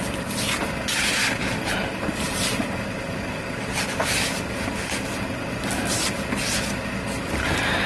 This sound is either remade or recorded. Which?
recorded